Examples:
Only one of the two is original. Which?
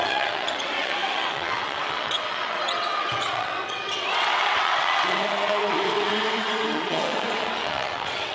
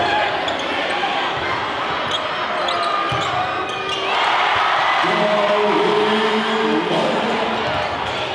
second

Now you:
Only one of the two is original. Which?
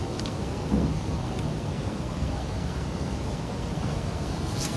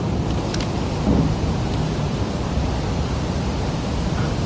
second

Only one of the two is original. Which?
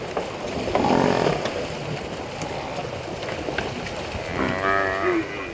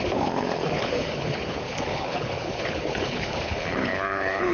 first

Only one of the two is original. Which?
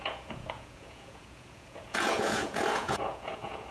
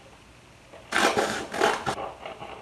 second